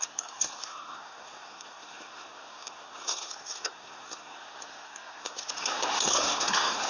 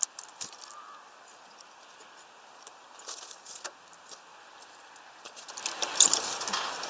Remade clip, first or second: first